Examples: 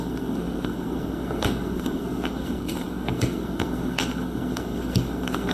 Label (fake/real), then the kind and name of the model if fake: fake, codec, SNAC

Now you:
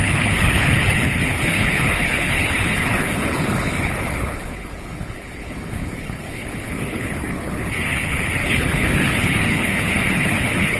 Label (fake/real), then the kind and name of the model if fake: fake, codec, HILCodec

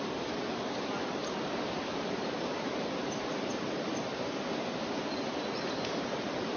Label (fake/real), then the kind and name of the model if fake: fake, vocoder, BigVGAN v2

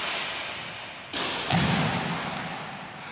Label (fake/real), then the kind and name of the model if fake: real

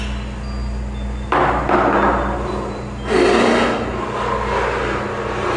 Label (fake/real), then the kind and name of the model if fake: real